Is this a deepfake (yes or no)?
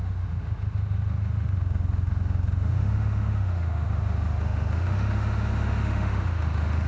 yes